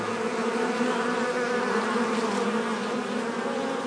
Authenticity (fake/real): real